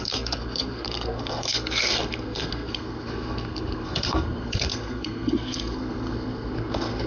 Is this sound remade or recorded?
remade